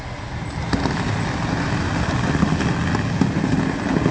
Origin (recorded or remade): recorded